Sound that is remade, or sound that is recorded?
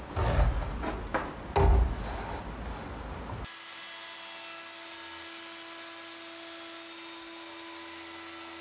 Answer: recorded